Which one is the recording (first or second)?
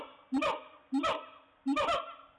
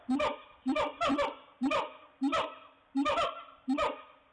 first